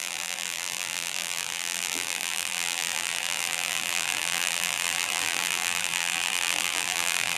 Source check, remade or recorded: remade